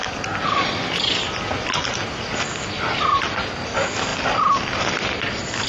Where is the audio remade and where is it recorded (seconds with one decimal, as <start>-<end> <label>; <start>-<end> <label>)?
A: 0.0-5.7 recorded